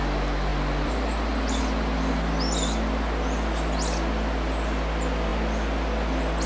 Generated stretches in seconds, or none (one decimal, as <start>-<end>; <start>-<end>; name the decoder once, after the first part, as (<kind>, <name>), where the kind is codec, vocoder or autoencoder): none